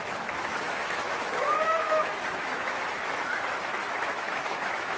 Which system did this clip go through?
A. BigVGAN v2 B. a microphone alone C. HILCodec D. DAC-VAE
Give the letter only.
D